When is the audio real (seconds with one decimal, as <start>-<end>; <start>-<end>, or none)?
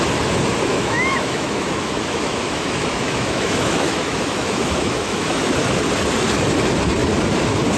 0.0-0.7; 5.4-7.8